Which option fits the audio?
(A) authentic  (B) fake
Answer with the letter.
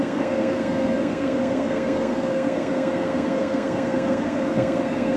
B